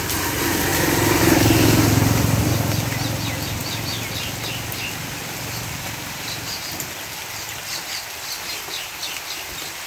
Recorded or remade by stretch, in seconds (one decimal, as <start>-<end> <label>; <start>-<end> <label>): 0.0-0.7 recorded; 0.7-1.2 remade; 1.2-9.0 recorded; 9.0-9.9 remade